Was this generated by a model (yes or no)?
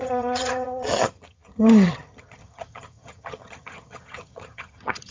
yes